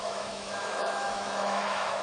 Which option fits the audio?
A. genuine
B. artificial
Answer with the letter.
B